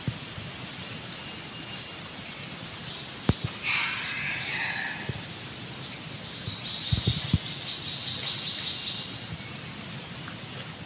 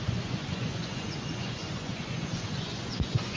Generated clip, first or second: second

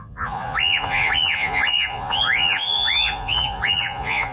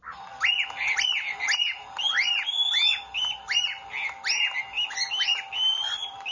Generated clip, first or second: first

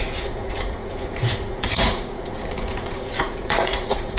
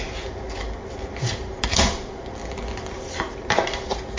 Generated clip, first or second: first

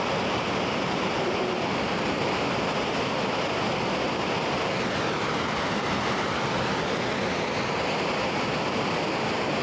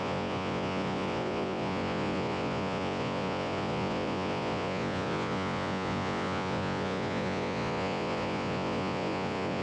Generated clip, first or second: second